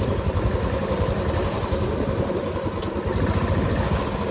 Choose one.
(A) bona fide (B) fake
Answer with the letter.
A